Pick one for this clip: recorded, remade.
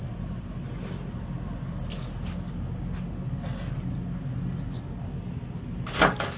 recorded